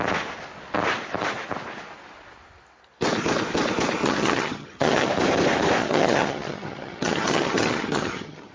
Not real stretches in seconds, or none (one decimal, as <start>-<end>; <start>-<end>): 4.0-5.1; 5.8-8.5